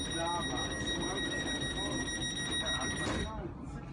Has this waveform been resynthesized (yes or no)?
no